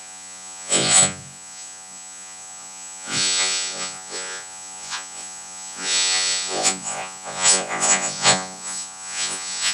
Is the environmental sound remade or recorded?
remade